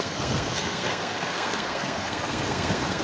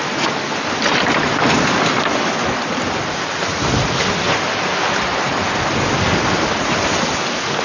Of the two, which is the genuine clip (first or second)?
second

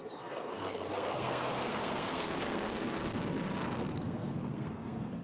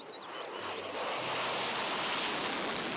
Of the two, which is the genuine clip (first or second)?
second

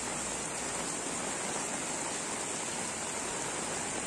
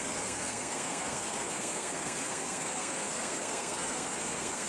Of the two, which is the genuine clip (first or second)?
first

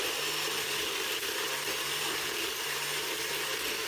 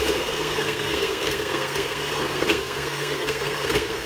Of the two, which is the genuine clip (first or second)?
first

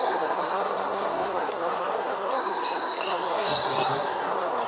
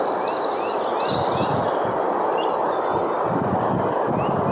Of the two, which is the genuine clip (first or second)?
second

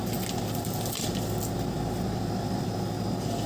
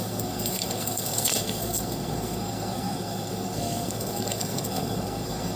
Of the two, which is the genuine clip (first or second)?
first